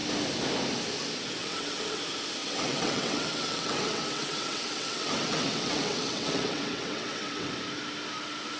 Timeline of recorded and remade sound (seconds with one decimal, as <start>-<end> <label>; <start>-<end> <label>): 0.0-1.4 recorded; 1.4-2.0 remade; 2.0-2.4 recorded; 2.4-7.5 remade; 7.5-8.6 recorded